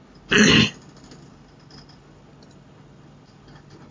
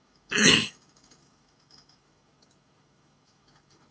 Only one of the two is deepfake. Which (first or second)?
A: second